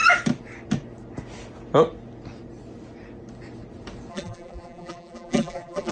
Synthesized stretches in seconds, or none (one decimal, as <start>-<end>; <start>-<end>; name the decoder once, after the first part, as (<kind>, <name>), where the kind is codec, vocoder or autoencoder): 4.1-5.9 (vocoder, BigVGAN v2)